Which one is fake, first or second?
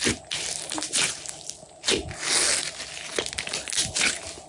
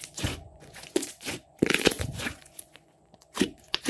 second